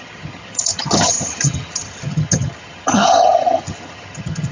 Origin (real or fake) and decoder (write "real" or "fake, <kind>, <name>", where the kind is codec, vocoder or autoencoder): fake, vocoder, HiFi-GAN